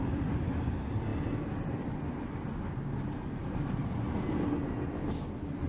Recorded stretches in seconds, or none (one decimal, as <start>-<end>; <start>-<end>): 0.0-5.7